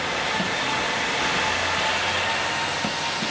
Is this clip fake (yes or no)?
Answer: no